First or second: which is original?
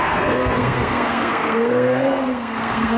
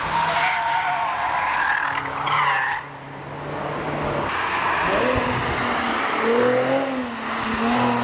second